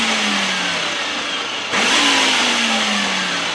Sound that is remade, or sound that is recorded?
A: recorded